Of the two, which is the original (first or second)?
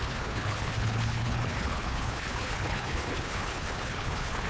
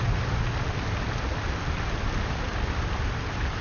second